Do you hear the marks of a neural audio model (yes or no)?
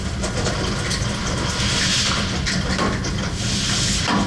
no